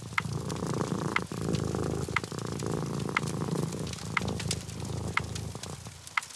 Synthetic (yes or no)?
no